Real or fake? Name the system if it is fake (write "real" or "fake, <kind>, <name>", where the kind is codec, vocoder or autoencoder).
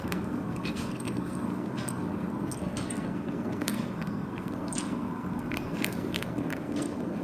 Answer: fake, codec, SNAC